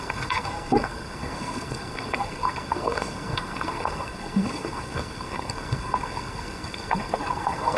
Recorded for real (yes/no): no